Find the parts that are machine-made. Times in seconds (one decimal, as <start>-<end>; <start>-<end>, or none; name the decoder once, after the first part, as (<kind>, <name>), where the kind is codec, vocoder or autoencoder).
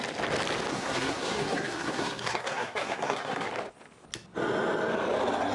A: 0.7-3.5 (codec, SNAC)